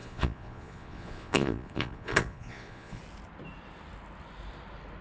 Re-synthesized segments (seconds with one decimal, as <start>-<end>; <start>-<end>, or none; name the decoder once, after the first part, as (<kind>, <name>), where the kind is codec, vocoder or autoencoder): 0.0-3.0 (vocoder, Vocos)

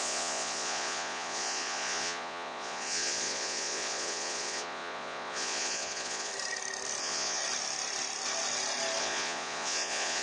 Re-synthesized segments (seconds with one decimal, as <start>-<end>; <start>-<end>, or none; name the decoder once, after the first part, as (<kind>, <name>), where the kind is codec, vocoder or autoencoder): 0.0-6.3 (vocoder, Vocos); 7.0-7.4; 9.0-10.2

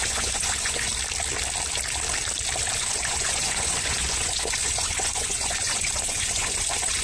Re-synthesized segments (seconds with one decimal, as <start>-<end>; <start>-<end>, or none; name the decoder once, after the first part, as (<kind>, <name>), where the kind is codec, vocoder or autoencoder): 0.0-0.9 (vocoder, Vocos); 2.8-7.0

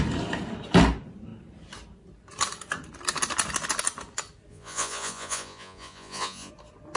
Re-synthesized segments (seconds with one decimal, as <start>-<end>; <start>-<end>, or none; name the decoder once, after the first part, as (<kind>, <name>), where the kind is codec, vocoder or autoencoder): 4.5-6.5 (vocoder, Vocos)

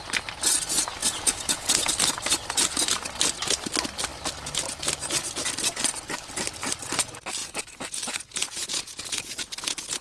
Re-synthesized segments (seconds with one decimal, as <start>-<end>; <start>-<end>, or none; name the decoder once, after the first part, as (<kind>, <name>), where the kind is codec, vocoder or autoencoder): 1.0-1.9 (vocoder, Vocos); 7.4-10.0

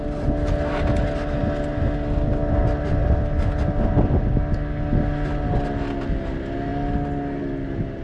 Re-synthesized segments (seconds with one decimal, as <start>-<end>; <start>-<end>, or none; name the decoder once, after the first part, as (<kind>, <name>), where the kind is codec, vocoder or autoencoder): none

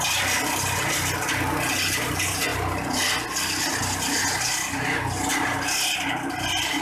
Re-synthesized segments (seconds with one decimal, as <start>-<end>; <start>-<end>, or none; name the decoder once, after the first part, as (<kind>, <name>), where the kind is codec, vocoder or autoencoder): none

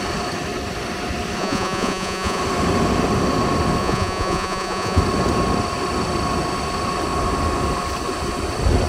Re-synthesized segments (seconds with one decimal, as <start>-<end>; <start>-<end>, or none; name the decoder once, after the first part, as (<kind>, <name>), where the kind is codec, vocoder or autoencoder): 1.4-2.4 (vocoder, Vocos); 3.8-5.0